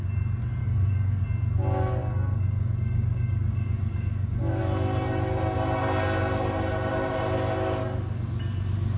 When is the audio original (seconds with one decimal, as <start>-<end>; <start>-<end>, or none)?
0.0-0.6; 1.2-2.0; 4.6-9.0

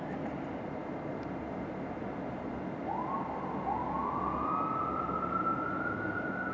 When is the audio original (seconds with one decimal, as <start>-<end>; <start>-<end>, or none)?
0.0-6.5

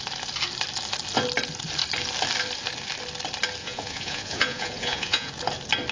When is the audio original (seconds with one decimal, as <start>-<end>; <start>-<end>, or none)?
0.0-3.6; 5.3-5.9

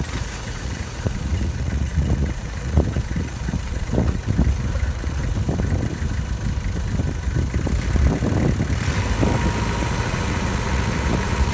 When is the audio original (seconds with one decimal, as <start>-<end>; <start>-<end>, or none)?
4.2-4.8; 5.2-9.8

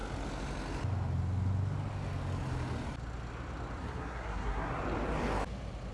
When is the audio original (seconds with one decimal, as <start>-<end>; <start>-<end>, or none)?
0.0-3.8; 4.8-5.9

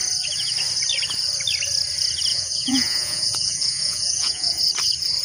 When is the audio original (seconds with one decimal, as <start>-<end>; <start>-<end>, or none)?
0.0-2.3; 4.6-5.2

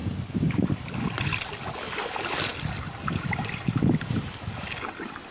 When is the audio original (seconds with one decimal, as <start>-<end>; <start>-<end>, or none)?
0.0-5.3

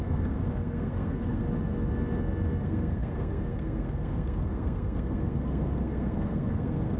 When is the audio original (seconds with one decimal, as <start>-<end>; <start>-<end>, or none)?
1.4-2.6